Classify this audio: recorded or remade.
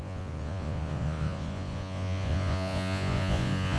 remade